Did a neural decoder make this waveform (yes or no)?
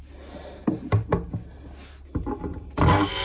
no